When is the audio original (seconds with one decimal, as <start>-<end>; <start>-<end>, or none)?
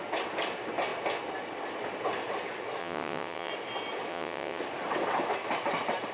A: 0.0-2.8; 3.5-4.1; 4.6-6.1